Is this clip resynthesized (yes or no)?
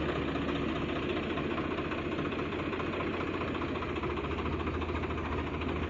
no